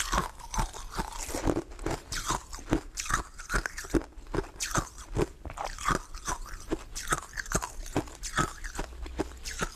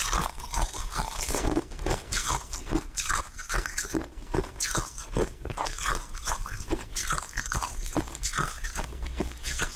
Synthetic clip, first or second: second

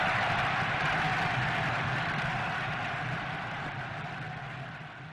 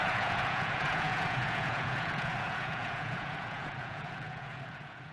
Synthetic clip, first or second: second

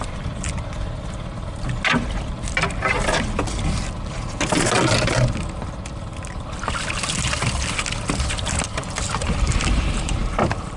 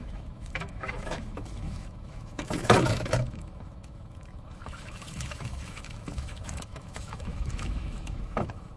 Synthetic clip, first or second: second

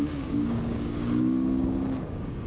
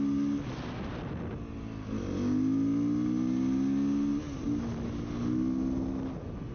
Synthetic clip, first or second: first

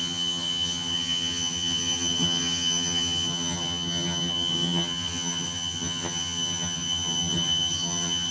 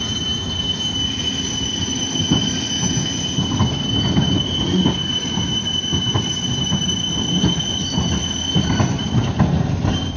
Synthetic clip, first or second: first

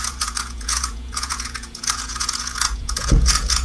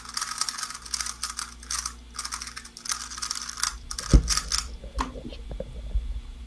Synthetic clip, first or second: first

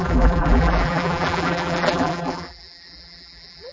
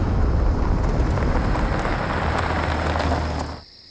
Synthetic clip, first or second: first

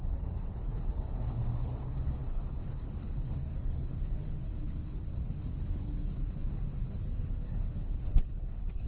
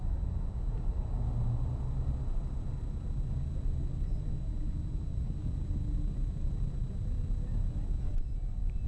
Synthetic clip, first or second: first